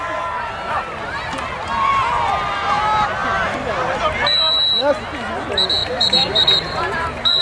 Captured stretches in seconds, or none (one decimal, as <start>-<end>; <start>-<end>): 0.0-5.8